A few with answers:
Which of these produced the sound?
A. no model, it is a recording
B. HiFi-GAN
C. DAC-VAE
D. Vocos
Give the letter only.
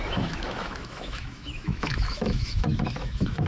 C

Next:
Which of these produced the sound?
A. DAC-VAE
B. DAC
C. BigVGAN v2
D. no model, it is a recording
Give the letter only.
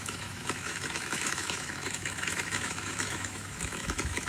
A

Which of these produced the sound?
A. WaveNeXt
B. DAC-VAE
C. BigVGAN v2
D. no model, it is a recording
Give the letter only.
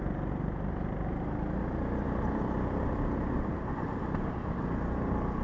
D